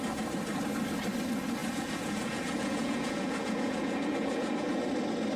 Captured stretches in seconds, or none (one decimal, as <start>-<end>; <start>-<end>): 0.0-1.6; 4.8-5.4